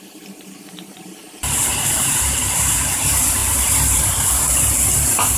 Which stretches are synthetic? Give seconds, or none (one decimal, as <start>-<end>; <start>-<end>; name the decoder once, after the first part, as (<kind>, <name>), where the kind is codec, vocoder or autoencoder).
0.0-5.4 (vocoder, BigVGAN v2)